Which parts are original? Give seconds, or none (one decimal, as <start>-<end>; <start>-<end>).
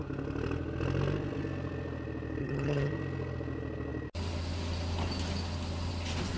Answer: 0.0-2.4; 2.9-6.4